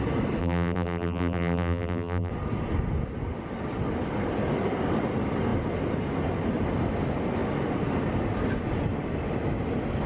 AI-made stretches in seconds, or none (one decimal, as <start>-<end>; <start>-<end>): 0.4-2.3

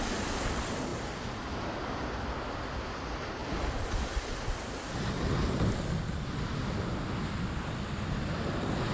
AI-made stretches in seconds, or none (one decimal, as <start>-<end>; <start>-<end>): none

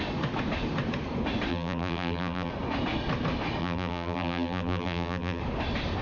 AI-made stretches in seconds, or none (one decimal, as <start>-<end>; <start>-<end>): 1.5-2.5; 3.6-5.4

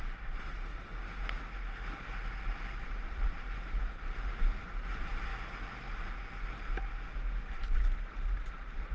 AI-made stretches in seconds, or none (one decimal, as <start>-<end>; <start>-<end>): 0.0-0.7; 2.4-5.3; 7.5-8.9

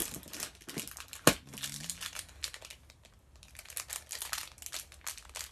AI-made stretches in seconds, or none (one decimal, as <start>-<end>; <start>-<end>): none

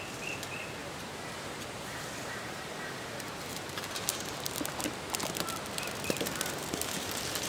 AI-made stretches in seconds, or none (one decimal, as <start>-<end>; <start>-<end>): 0.8-4.7

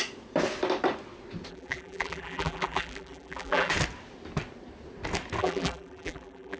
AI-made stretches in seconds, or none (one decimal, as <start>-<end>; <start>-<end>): 1.5-3.7; 5.4-6.6